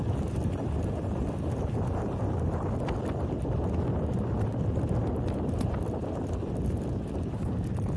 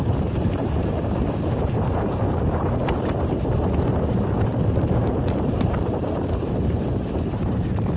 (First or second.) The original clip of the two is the first